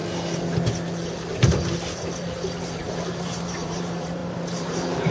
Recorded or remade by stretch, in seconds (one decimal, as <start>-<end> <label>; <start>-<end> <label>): 0.0-2.7 recorded; 2.7-5.1 remade